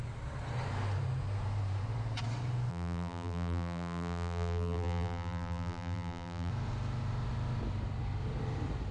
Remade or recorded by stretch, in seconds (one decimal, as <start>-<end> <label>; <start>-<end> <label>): 0.0-2.7 recorded; 2.7-6.5 remade; 6.5-8.9 recorded